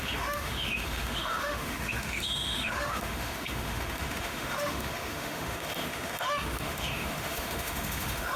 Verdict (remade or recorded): remade